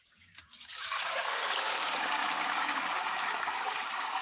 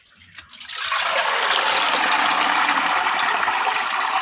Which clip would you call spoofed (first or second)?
first